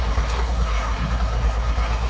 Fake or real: fake